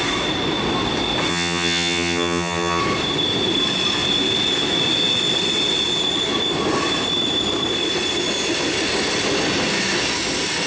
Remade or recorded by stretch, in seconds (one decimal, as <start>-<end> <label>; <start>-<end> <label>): 0.0-1.3 recorded; 1.3-2.8 remade; 2.8-10.7 recorded